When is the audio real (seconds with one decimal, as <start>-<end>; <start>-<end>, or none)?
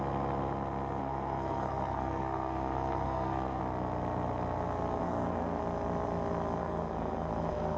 0.0-1.0; 3.6-5.0; 5.6-6.6